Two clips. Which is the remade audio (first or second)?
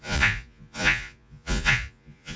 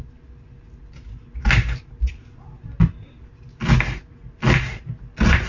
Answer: first